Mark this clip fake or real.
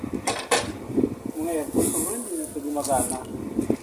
real